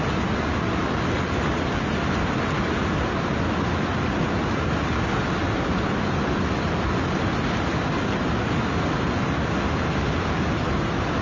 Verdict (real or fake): real